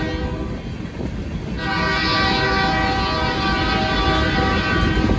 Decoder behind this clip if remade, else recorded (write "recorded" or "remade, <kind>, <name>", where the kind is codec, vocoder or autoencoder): recorded